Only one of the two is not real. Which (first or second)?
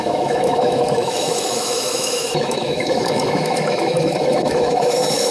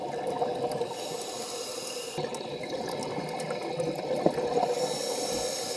first